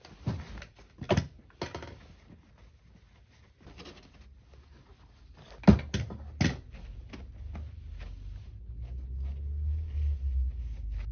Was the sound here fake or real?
real